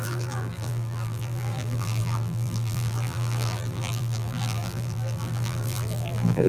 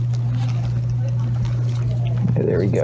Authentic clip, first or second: second